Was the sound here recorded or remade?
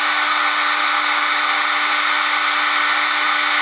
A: recorded